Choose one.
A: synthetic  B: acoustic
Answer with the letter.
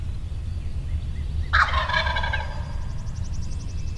B